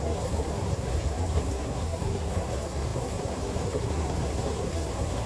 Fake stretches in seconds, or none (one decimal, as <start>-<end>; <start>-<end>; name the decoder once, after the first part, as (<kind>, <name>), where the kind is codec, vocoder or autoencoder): 0.0-5.3 (codec, SNAC)